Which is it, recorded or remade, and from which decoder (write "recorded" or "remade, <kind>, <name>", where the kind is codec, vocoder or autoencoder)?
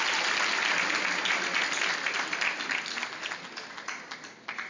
recorded